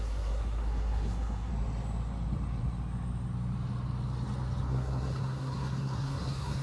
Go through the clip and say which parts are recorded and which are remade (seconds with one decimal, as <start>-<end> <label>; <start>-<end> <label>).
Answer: 0.0-1.5 remade; 1.5-4.7 recorded; 4.7-6.6 remade